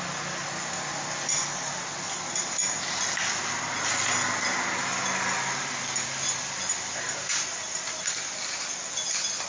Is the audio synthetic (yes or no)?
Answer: no